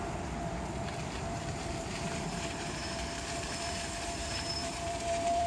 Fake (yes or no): yes